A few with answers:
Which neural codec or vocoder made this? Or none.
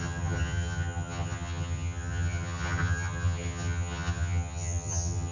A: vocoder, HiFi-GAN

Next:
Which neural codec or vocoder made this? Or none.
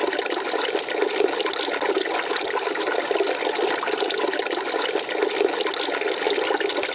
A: none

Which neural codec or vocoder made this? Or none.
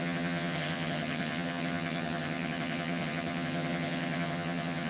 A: vocoder, HiFi-GAN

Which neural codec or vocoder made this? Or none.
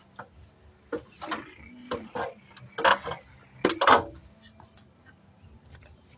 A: none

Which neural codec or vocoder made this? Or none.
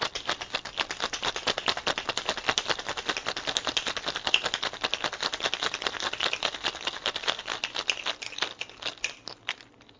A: none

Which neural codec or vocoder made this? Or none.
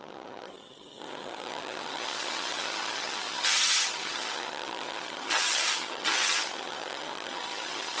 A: vocoder, HiFi-GAN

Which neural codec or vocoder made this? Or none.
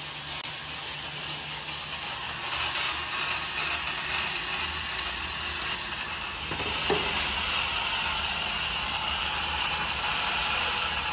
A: none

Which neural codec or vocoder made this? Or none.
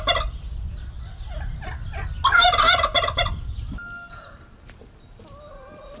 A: none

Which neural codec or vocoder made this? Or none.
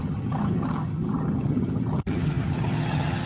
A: vocoder, HiFi-GAN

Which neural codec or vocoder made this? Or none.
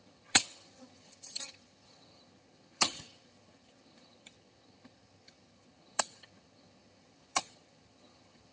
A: vocoder, HiFi-GAN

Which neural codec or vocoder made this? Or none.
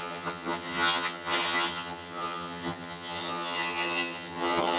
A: vocoder, HiFi-GAN